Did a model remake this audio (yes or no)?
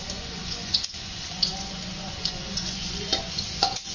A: yes